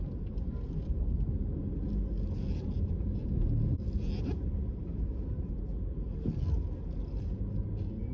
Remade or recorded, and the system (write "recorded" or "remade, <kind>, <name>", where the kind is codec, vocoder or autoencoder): recorded